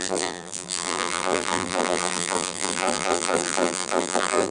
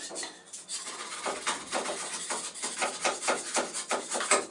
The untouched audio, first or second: second